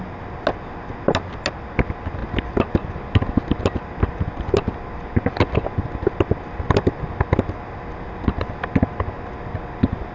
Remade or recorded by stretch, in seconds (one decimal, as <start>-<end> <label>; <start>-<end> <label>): 0.0-10.1 recorded